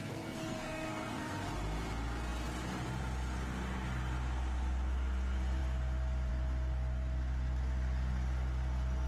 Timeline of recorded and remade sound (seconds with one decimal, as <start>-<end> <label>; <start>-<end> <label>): 0.0-1.5 remade; 1.5-9.1 recorded